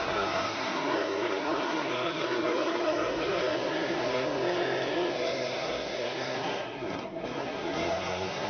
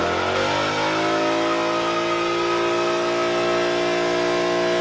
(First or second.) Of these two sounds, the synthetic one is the first